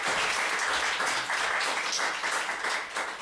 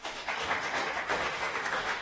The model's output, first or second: second